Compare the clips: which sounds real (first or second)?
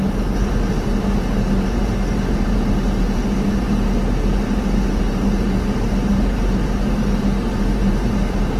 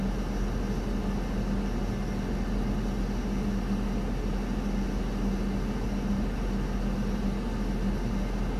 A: second